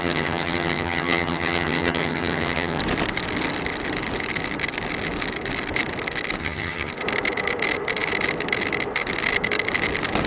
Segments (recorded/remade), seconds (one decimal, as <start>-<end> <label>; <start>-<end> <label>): 0.0-2.8 remade; 2.8-6.4 recorded; 6.4-6.9 remade; 6.9-10.3 recorded